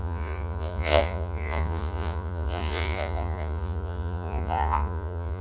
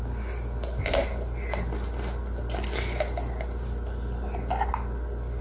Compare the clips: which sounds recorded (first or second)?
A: second